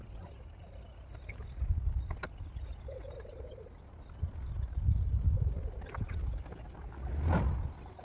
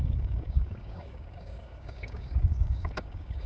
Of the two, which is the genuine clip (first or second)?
first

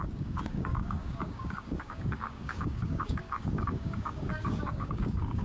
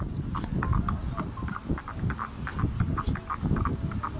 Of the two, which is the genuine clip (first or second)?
second